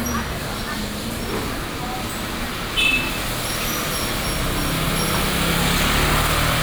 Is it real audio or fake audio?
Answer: real